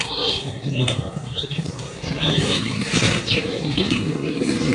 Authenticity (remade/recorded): remade